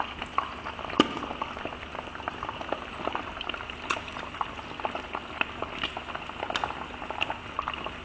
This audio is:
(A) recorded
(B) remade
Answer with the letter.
A